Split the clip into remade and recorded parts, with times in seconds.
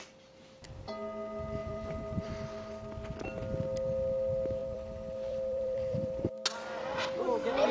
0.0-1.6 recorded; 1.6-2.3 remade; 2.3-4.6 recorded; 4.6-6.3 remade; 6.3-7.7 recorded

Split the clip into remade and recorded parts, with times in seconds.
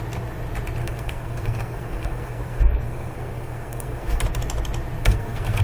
0.0-0.8 recorded; 0.8-4.2 remade; 4.2-5.0 recorded; 5.0-5.6 remade